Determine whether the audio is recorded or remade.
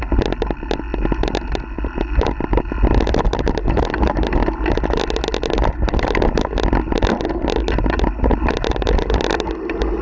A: recorded